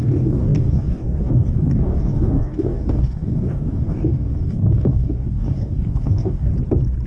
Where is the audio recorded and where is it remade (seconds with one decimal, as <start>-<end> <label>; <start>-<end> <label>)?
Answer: 0.0-6.5 remade; 6.5-7.1 recorded